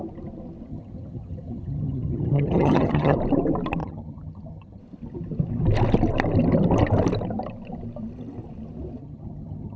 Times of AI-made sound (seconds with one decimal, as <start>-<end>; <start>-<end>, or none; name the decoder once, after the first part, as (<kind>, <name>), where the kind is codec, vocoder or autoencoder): 0.7-3.2 (vocoder, HiFi-GAN); 3.8-4.8; 9.0-9.8